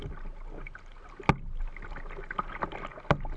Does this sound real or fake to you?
real